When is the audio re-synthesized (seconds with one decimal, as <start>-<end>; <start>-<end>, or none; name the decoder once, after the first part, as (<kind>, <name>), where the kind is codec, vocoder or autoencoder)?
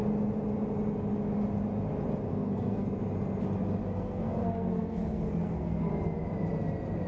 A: 2.3-3.0 (codec, SNAC); 3.8-5.9